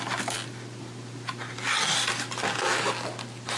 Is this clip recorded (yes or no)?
yes